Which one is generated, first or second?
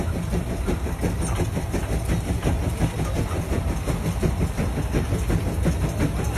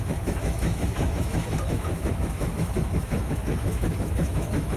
second